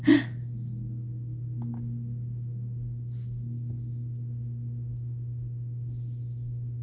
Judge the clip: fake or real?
real